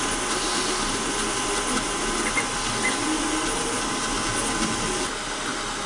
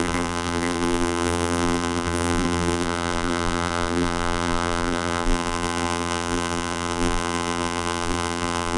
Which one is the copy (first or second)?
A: second